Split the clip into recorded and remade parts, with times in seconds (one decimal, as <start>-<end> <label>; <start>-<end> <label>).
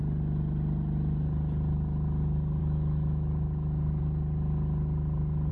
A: 0.0-2.6 recorded; 2.6-4.0 remade; 4.0-5.5 recorded